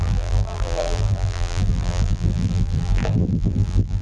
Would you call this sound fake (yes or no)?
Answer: yes